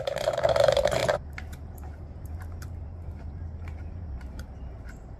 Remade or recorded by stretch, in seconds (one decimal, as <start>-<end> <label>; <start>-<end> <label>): 0.0-5.2 remade